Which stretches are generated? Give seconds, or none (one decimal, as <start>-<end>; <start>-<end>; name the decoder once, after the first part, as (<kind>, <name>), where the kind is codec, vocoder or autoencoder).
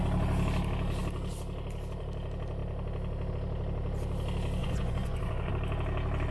4.6-5.5 (vocoder, Vocos)